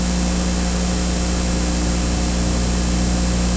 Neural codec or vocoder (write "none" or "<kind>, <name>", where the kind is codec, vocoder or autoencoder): none